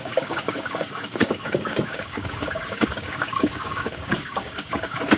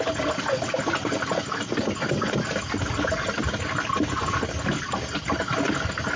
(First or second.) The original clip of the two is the second